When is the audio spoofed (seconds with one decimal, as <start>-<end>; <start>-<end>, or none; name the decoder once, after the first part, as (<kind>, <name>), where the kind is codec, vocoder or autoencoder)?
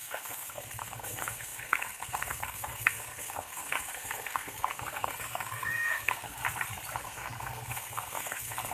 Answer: 0.0-6.4 (codec, SNAC); 7.0-8.7